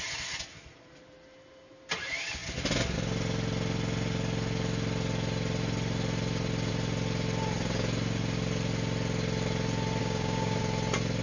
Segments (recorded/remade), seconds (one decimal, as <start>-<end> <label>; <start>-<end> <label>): 0.0-10.0 recorded; 10.0-10.6 remade; 10.6-11.2 recorded